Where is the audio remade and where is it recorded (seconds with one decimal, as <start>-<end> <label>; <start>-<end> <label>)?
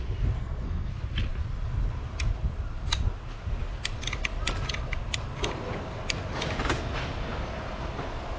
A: 0.0-0.4 recorded; 0.4-0.9 remade; 0.9-8.4 recorded